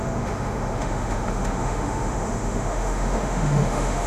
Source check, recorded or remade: remade